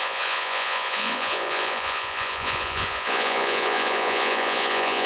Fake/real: fake